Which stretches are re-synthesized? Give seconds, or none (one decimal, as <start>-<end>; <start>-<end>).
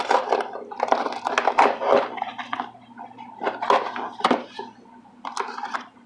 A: none